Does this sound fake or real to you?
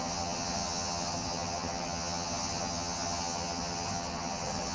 fake